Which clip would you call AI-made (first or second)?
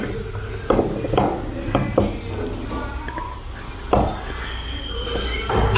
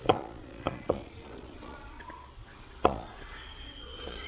second